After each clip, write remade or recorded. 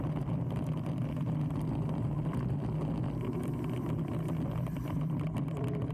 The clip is remade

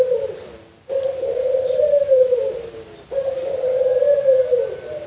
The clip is remade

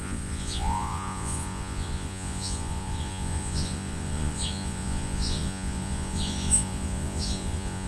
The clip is remade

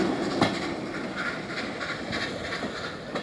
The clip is recorded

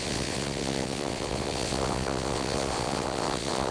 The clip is remade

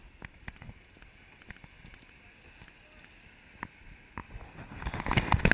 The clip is recorded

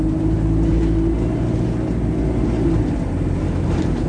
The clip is recorded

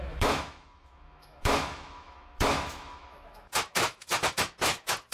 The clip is remade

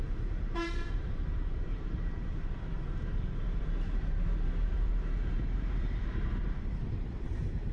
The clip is remade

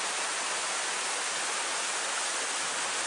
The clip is recorded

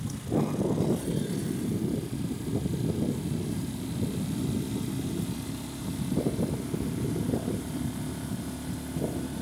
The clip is recorded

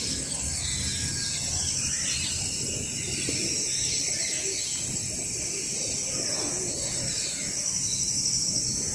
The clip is recorded